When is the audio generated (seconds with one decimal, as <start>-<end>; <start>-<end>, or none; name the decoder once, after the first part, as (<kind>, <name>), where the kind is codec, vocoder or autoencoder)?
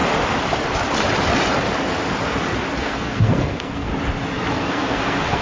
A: 2.8-3.9 (codec, SNAC); 4.5-5.4